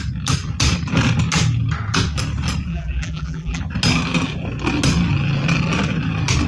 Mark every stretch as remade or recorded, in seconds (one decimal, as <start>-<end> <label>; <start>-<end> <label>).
0.0-2.7 recorded; 2.7-3.6 remade; 3.6-6.5 recorded